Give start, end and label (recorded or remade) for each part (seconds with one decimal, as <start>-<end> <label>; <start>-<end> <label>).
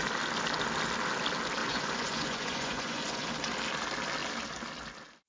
0.0-1.6 recorded; 1.6-3.3 remade; 3.3-5.3 recorded